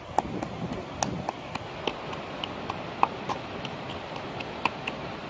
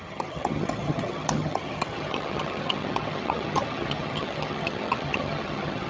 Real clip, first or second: first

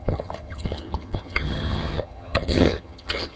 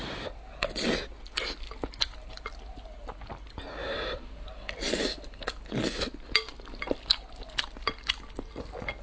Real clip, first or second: second